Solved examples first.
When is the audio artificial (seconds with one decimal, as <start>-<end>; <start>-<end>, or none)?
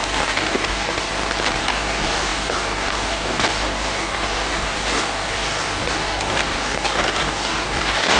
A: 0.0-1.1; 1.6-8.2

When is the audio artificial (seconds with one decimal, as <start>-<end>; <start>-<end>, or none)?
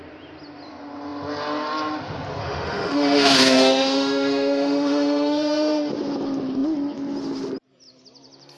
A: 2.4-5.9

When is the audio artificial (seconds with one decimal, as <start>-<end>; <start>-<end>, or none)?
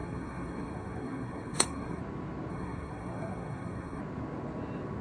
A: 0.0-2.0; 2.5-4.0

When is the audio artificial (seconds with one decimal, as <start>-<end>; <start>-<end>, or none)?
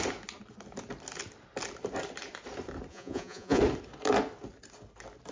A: 2.9-3.6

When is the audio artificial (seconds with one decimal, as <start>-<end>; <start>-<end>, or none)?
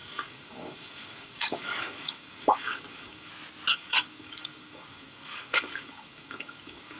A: 0.0-3.3; 3.7-7.0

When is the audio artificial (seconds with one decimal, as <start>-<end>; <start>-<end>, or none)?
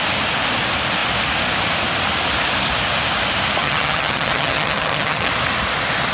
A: 3.6-5.3